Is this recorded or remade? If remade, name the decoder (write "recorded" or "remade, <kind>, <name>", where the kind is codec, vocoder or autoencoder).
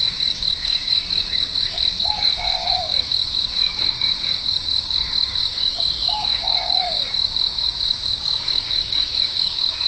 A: remade, codec, DAC